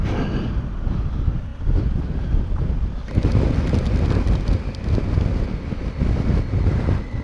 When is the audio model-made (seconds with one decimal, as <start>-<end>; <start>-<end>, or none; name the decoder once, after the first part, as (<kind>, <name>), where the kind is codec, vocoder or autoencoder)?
none